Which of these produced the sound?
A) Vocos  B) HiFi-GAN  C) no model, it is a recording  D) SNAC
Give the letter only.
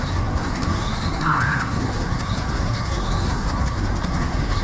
D